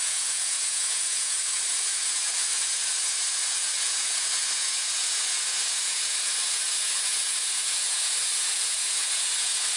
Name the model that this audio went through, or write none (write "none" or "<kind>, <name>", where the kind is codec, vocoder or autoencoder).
vocoder, Vocos